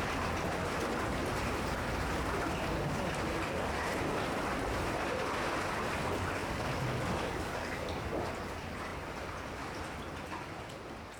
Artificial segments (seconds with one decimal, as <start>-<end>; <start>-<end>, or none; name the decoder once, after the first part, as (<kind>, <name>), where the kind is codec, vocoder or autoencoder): 6.4-8.3 (codec, DAC)